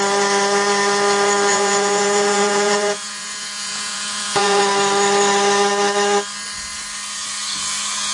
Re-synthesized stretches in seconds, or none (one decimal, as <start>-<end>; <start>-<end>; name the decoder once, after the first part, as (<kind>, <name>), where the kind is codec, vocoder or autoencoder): 1.5-4.6 (vocoder, Vocos)

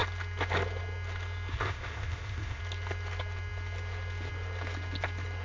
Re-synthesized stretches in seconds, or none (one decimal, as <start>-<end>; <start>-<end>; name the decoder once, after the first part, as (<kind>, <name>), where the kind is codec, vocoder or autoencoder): 1.5-2.6 (codec, ZipCodec)

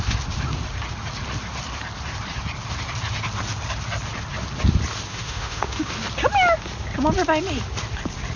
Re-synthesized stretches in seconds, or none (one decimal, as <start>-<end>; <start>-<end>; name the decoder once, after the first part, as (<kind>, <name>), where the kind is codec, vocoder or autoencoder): 5.1-5.9 (autoencoder, DAC-VAE)

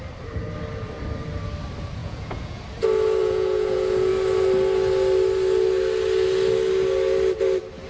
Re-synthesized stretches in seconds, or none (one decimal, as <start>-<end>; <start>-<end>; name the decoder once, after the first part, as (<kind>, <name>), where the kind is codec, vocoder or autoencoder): 2.0-2.6 (vocoder, Vocos); 3.2-4.1

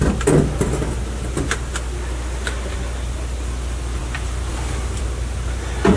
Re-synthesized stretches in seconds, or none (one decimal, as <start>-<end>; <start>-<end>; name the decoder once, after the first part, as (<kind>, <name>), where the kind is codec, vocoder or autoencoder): 4.0-5.0 (vocoder, BigVGAN v2)

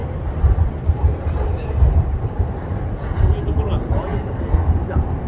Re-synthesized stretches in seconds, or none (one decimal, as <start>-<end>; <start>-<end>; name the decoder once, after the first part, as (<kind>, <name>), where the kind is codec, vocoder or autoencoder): 0.0-3.2 (vocoder, BigVGAN v2)